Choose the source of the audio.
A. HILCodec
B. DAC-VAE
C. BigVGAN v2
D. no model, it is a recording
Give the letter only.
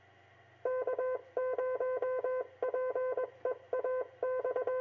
D